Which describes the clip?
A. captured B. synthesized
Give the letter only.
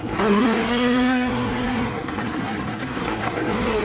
B